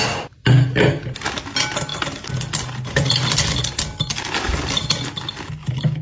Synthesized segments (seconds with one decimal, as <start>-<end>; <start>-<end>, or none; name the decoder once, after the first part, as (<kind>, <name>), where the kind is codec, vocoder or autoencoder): none